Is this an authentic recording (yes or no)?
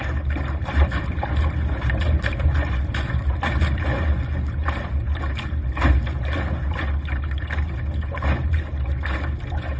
yes